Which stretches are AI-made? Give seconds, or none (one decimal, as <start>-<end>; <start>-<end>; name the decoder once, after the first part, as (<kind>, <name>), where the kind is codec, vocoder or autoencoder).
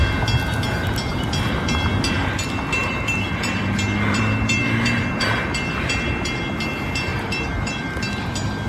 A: 1.1-1.9 (vocoder, BigVGAN v2); 2.8-5.3; 7.1-8.1